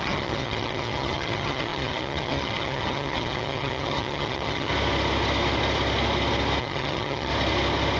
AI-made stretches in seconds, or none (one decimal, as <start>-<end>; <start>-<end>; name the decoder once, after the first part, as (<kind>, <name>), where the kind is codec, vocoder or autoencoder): 0.0-4.7 (vocoder, HiFi-GAN); 6.6-7.3